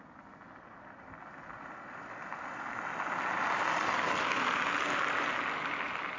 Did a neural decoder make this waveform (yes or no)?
no